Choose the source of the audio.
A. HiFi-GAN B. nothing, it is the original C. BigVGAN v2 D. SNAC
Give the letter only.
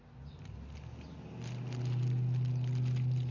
B